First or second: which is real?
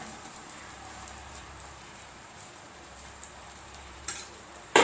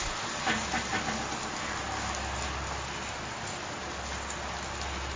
second